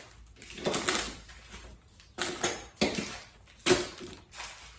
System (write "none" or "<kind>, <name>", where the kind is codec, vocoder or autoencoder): none